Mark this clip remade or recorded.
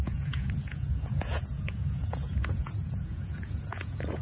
remade